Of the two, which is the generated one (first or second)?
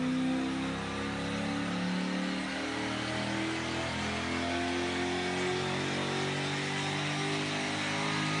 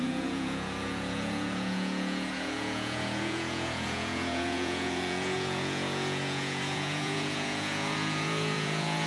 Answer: second